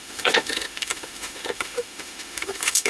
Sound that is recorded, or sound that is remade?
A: remade